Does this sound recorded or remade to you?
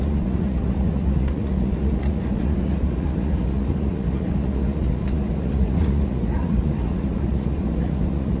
remade